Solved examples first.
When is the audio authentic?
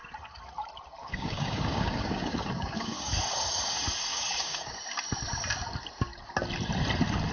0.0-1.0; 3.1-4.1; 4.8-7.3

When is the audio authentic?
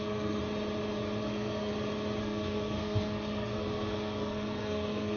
0.4-1.2; 1.7-2.2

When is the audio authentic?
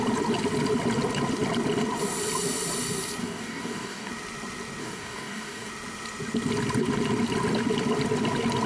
0.0-3.2; 4.1-4.8; 5.7-8.7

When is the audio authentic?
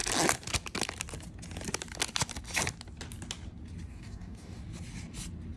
0.0-3.9; 4.6-5.6